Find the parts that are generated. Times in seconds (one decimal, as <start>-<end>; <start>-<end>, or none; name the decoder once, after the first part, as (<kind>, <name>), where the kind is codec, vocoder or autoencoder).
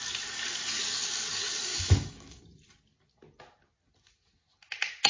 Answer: 1.7-2.4 (autoencoder, DAC-VAE)